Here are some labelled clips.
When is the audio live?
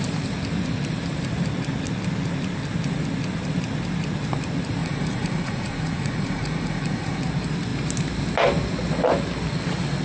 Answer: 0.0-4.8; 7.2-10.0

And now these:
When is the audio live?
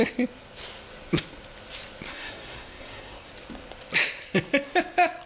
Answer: 0.0-2.1; 3.3-5.3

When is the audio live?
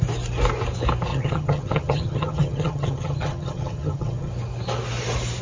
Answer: 0.0-1.1; 4.3-5.4